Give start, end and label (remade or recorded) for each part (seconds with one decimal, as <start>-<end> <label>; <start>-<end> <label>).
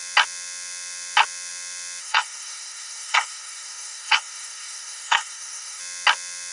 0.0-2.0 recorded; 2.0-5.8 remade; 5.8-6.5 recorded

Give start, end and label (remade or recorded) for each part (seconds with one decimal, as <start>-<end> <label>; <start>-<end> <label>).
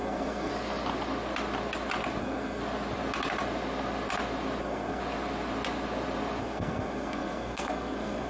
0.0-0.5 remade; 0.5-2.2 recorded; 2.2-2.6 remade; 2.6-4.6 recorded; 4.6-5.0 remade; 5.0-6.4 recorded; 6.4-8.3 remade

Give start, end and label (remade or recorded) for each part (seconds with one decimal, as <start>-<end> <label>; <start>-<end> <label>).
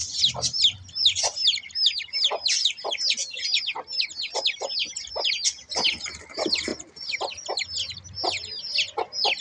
0.0-9.4 recorded